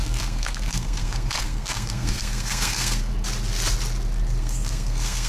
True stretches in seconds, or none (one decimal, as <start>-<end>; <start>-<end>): 3.1-4.4